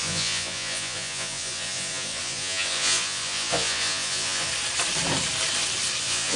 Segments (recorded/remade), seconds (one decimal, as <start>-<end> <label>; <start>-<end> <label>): 0.0-4.5 remade; 4.5-6.0 recorded; 6.0-6.4 remade